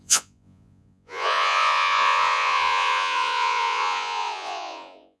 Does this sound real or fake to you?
fake